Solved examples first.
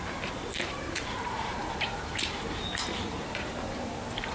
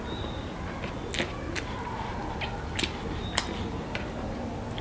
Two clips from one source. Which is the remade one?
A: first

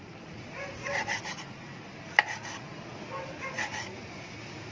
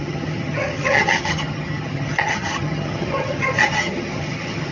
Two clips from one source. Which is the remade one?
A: second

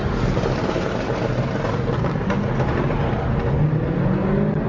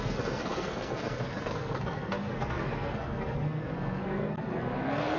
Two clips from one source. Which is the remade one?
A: second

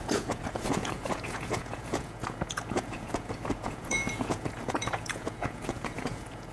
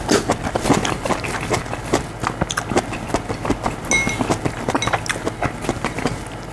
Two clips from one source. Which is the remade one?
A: first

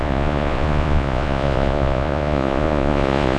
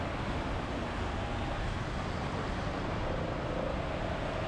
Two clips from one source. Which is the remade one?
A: first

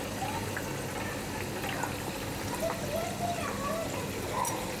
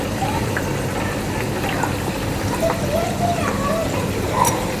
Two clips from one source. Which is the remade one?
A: second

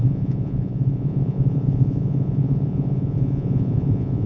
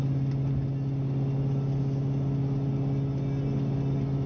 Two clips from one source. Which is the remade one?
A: first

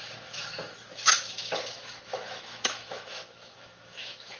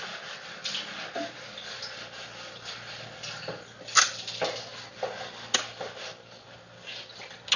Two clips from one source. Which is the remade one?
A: first